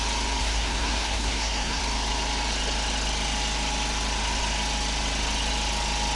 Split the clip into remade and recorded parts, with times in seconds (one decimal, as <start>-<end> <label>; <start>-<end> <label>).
0.0-0.4 recorded; 0.4-1.8 remade; 1.8-6.2 recorded